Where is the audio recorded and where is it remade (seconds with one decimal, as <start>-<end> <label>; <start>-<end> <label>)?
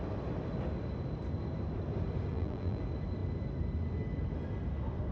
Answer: 0.0-2.3 recorded; 2.3-2.8 remade; 2.8-5.1 recorded